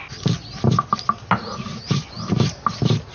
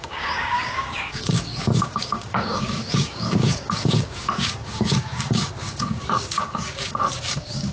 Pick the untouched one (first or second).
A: first